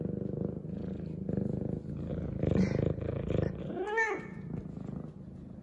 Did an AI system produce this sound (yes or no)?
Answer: no